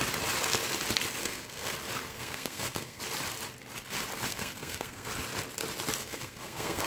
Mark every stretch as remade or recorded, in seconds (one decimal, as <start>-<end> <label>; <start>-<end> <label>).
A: 0.0-1.2 recorded; 1.2-1.7 remade; 1.7-2.1 recorded; 2.1-3.0 remade; 3.0-4.3 recorded; 4.3-5.1 remade; 5.1-6.0 recorded; 6.0-6.9 remade

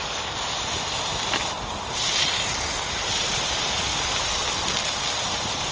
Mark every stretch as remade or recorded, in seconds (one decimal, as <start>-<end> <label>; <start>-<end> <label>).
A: 0.0-1.1 remade; 1.1-1.8 recorded; 1.8-3.9 remade; 3.9-5.2 recorded; 5.2-5.7 remade

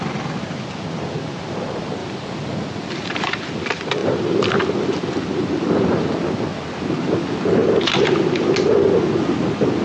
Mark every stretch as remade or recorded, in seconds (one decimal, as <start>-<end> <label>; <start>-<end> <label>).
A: 0.0-2.0 recorded; 2.0-3.5 remade; 3.5-4.0 recorded; 4.0-6.2 remade; 6.2-9.8 recorded

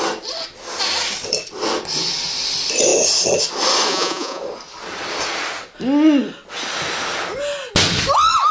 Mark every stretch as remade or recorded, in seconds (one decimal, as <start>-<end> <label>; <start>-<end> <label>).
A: 0.0-3.9 recorded; 3.9-4.4 remade; 4.4-8.5 recorded

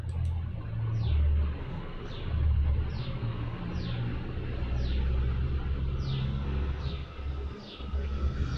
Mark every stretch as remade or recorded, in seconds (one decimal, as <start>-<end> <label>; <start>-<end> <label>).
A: 0.0-1.6 recorded; 1.6-2.1 remade; 2.1-3.0 recorded; 3.0-3.6 remade; 3.6-6.2 recorded; 6.2-8.6 remade

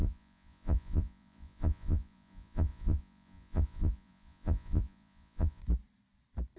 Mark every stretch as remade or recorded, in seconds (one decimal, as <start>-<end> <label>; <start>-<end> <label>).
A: 0.0-5.6 remade; 5.6-6.6 recorded

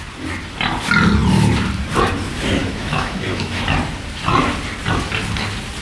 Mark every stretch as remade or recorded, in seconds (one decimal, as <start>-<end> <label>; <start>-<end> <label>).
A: 0.0-2.6 recorded; 2.6-3.6 remade; 3.6-5.8 recorded